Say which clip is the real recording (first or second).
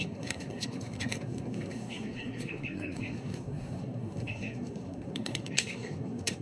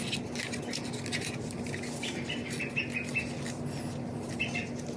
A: second